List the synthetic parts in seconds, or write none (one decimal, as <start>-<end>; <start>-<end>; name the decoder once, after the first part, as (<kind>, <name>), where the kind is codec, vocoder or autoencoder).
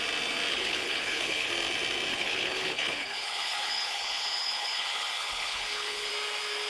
0.5-1.5 (codec, HILCodec); 2.1-6.1